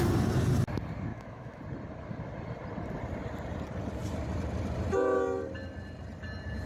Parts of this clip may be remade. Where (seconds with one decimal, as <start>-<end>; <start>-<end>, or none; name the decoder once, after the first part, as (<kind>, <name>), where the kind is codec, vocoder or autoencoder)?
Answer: 1.1-1.6 (autoencoder, DAC-VAE)

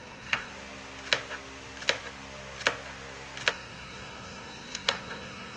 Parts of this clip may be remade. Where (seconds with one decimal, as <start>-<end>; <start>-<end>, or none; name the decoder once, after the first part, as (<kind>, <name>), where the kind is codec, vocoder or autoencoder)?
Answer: 0.0-0.5 (codec, SNAC); 3.5-5.6

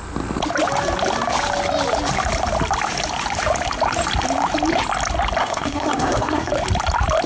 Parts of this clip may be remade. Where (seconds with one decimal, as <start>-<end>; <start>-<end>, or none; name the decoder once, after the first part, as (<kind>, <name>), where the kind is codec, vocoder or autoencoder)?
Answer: 5.4-6.5 (codec, SNAC)

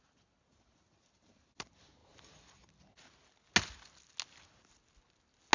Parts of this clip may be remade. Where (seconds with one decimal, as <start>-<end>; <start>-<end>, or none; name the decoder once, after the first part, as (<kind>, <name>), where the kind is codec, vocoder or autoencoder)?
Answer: none

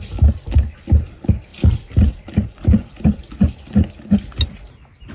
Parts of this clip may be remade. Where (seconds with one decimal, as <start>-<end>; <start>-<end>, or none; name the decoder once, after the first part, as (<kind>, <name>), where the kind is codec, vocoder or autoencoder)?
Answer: 1.5-2.9 (vocoder, BigVGAN v2)

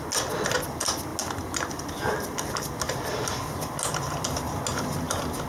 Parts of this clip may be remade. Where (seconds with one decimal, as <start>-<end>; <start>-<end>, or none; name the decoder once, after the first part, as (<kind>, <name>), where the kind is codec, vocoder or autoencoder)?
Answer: none